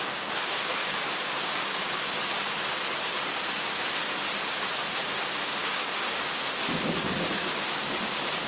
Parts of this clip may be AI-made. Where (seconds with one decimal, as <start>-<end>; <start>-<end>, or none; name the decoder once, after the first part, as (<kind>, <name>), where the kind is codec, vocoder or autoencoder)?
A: 0.8-1.9 (codec, DAC); 5.6-6.3